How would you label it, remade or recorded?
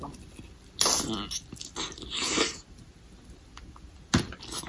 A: recorded